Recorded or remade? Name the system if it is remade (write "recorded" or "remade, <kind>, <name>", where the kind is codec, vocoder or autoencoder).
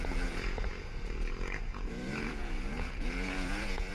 remade, vocoder, Vocos